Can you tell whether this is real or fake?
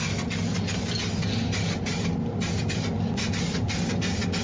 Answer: real